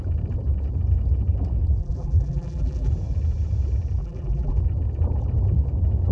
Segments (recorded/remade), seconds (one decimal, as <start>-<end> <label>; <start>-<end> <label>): 0.0-1.8 recorded; 1.8-2.9 remade; 2.9-4.0 recorded; 4.0-4.6 remade; 4.6-6.1 recorded